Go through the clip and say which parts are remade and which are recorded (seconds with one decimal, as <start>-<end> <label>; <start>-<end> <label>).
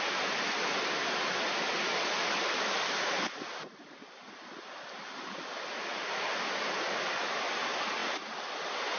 0.0-9.0 recorded